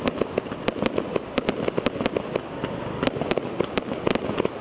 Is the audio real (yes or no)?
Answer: yes